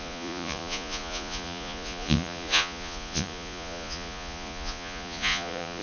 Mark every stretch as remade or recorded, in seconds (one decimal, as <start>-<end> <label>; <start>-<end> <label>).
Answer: 0.0-5.8 remade